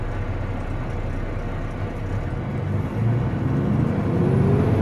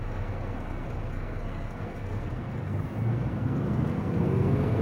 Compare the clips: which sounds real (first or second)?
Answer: first